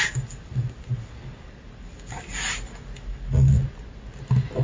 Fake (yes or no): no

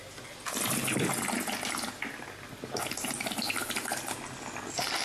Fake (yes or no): no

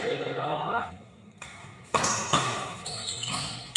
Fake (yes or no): yes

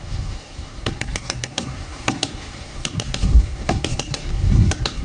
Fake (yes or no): yes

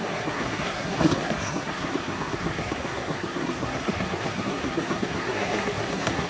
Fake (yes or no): yes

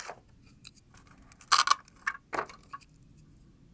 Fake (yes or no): no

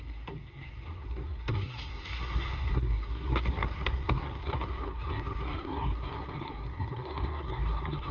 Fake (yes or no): yes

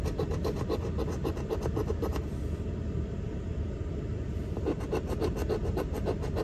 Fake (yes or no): no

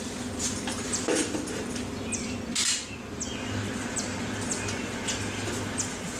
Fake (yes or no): no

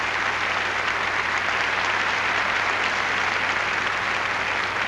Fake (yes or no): no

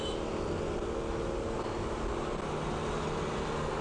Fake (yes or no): no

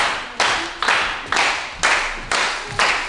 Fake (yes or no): no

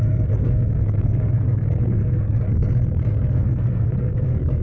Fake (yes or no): yes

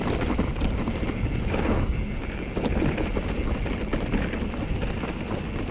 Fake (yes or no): no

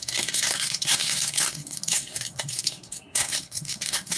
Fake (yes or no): yes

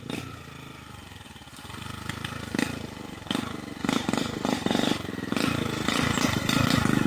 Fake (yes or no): no